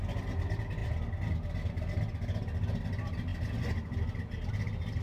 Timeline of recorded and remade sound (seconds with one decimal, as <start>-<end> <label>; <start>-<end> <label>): 0.0-5.0 recorded